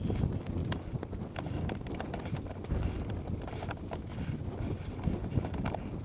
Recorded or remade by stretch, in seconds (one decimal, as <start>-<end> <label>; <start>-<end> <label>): 0.0-6.0 recorded